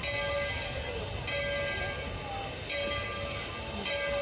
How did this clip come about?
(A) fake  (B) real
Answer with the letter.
B